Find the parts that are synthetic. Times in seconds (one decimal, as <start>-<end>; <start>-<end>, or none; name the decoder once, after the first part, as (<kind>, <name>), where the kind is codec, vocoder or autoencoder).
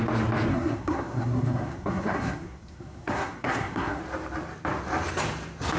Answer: 0.5-4.0 (codec, SNAC)